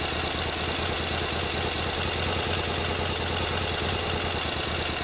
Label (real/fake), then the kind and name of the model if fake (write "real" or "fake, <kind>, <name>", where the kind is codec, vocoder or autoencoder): real